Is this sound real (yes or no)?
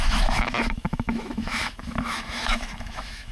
no